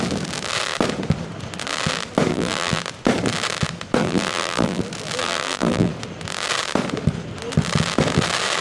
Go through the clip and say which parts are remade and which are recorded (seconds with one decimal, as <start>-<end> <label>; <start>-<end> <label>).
0.0-2.3 recorded; 2.3-2.8 remade; 2.8-4.0 recorded; 4.0-4.8 remade; 4.8-5.2 recorded; 5.2-5.9 remade; 5.9-8.6 recorded